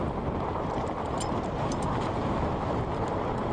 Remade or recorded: recorded